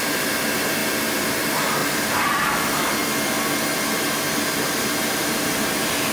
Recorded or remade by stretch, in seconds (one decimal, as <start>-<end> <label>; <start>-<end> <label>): 0.0-0.8 remade; 0.8-1.3 recorded; 1.3-3.0 remade; 3.0-4.5 recorded; 4.5-6.1 remade